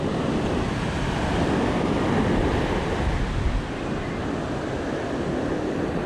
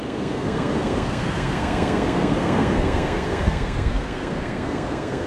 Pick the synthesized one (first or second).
second